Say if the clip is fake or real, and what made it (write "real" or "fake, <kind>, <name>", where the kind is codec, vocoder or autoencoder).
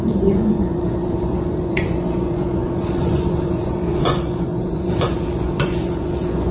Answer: fake, vocoder, Vocos